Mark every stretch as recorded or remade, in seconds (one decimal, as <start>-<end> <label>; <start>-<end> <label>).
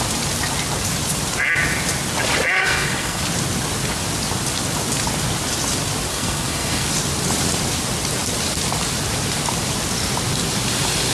0.0-2.6 recorded; 2.6-3.2 remade; 3.2-6.1 recorded; 6.1-6.9 remade; 6.9-11.1 recorded